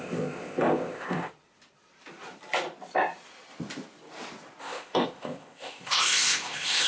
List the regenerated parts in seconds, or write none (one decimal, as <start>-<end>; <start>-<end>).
0.0-1.3; 4.6-6.9